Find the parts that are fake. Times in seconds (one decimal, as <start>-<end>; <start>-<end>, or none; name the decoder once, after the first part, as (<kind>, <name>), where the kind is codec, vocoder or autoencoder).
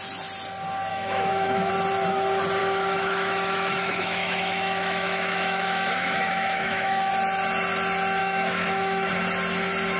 0.9-1.7 (autoencoder, DAC-VAE); 2.6-7.1; 8.2-9.1